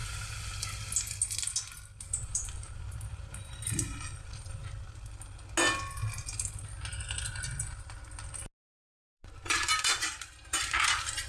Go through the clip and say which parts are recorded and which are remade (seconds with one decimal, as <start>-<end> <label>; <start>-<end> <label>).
0.0-2.1 recorded; 2.1-4.6 remade; 4.6-8.9 recorded; 8.9-11.3 remade